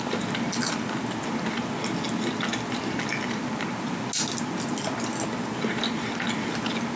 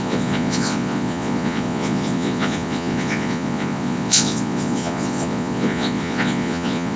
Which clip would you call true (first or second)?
first